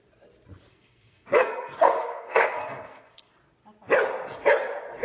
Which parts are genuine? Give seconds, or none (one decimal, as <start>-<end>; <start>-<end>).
0.0-0.7; 3.3-5.0